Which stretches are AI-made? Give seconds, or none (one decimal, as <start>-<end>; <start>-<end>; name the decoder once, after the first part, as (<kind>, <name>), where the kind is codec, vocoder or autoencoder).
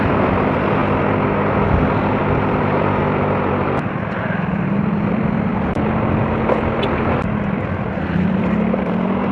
0.0-0.8 (vocoder, BigVGAN v2); 2.2-9.3